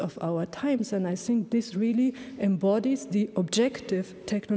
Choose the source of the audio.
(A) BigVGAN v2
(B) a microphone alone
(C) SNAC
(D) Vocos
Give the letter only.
B